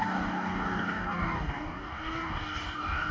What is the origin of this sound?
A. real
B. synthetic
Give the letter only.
B